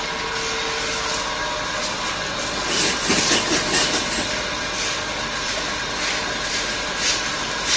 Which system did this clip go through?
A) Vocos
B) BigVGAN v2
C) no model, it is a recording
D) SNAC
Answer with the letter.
C